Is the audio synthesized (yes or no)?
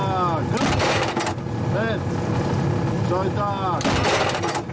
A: no